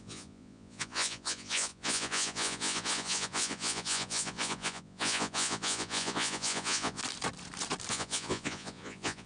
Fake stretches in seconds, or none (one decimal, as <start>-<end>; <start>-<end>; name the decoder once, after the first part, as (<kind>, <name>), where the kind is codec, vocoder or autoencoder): 0.0-7.0 (vocoder, Vocos); 7.9-9.3